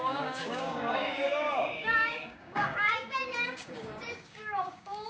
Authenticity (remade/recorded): remade